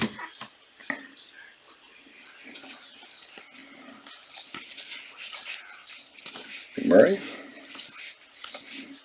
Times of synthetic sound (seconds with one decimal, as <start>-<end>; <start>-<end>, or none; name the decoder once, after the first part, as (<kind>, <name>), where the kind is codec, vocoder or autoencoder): 0.8-2.4 (vocoder, BigVGAN v2); 3.6-6.7; 7.5-8.2